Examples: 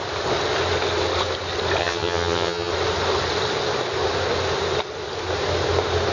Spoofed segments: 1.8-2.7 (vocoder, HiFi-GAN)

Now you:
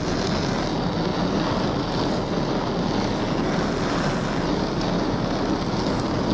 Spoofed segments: none

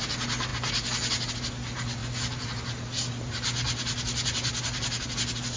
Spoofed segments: none